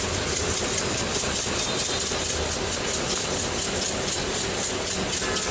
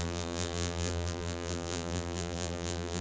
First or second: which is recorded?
first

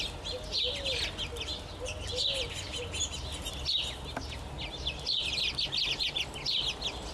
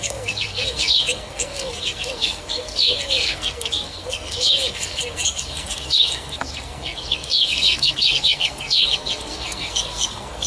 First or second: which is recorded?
first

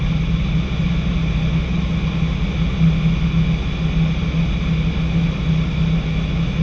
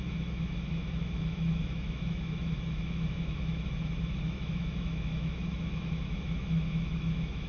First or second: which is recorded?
first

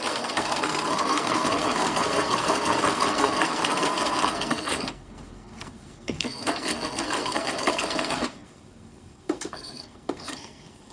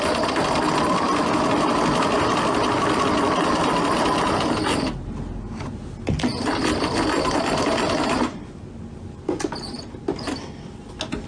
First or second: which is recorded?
second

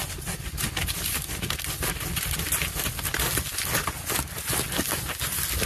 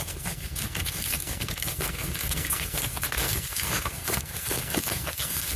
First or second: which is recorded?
first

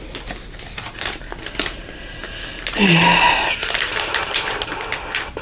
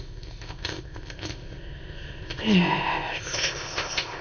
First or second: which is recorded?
first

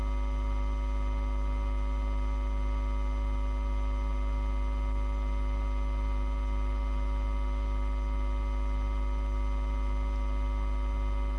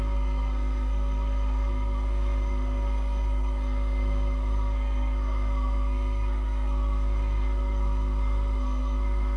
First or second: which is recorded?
first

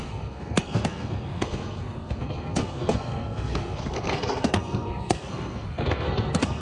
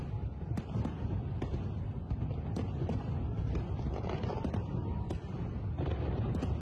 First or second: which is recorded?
second